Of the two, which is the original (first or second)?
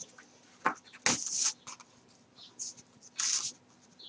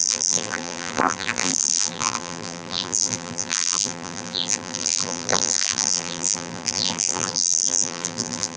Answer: first